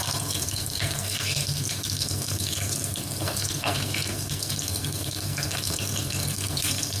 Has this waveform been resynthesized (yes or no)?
yes